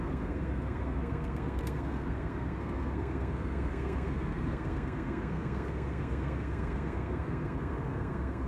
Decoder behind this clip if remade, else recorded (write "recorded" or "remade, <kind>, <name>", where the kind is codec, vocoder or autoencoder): remade, codec, SNAC